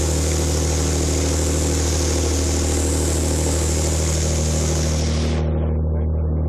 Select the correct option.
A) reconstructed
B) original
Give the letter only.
B